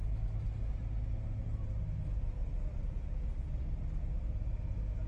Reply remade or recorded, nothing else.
recorded